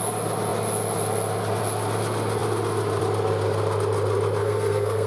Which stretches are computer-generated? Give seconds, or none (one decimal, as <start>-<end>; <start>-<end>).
4.4-5.1